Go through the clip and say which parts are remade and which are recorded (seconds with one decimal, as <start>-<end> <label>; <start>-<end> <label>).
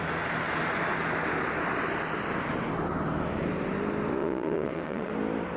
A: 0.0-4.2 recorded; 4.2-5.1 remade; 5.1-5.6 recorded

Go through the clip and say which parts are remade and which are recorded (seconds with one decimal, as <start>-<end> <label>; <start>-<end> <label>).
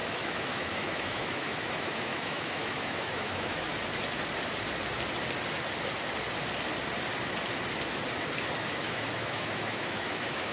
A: 0.0-3.7 remade; 3.7-8.7 recorded; 8.7-10.5 remade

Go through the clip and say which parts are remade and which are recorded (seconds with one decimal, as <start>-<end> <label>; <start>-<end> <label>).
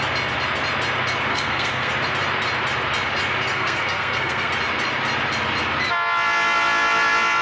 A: 0.0-1.3 recorded; 1.3-1.9 remade; 1.9-3.5 recorded; 3.5-4.5 remade; 4.5-7.4 recorded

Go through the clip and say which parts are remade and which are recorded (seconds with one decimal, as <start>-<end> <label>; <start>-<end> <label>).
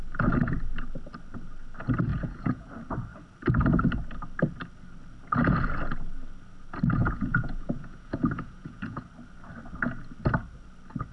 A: 0.0-2.1 recorded; 2.1-2.7 remade; 2.7-7.0 recorded; 7.0-9.0 remade; 9.0-11.1 recorded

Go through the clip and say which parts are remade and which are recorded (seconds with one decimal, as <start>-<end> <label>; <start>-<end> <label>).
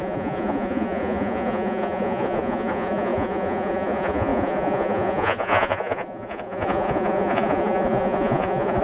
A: 0.0-8.8 remade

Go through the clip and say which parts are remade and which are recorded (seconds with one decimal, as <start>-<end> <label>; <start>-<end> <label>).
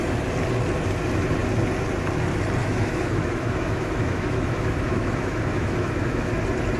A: 0.0-2.6 recorded; 2.6-6.3 remade; 6.3-6.8 recorded